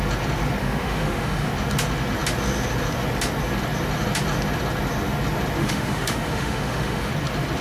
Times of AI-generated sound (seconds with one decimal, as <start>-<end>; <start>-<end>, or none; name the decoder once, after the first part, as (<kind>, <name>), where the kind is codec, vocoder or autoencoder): 0.6-1.5 (autoencoder, DAC-VAE); 5.6-7.1